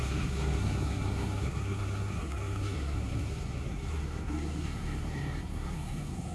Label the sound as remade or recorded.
remade